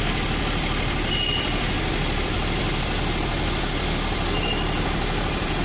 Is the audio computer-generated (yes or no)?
yes